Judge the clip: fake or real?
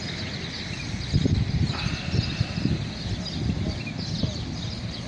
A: real